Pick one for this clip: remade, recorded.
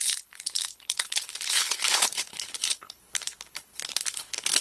remade